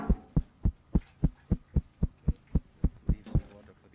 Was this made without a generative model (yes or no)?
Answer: yes